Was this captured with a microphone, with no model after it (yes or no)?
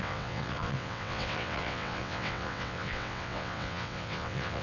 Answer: no